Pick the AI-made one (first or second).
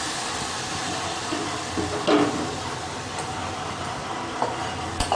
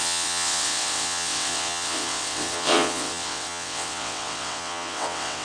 second